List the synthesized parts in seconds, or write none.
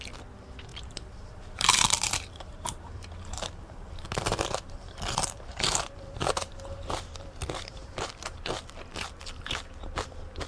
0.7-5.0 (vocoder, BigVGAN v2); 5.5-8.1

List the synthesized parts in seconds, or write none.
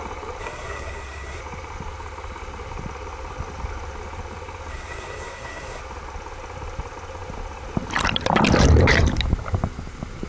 0.4-1.4 (codec, SNAC); 4.7-5.8